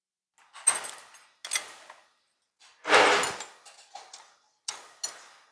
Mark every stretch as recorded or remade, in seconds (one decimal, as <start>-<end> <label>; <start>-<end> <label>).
0.0-5.5 recorded

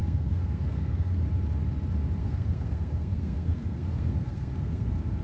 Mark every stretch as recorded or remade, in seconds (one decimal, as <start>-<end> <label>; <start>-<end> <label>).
0.0-1.2 remade; 1.2-2.2 recorded; 2.2-5.2 remade

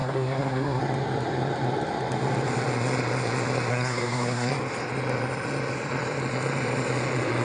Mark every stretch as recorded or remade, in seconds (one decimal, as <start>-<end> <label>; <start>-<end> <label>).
0.0-0.8 remade; 0.8-3.7 recorded; 3.7-4.5 remade; 4.5-7.4 recorded

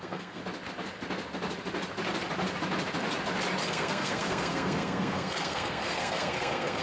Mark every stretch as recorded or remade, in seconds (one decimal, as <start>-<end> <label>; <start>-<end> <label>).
0.0-0.4 remade; 0.4-3.7 recorded; 3.7-6.8 remade

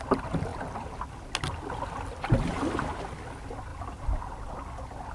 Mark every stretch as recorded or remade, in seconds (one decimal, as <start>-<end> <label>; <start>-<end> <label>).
0.0-5.1 recorded